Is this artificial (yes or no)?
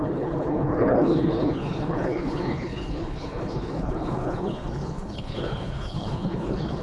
yes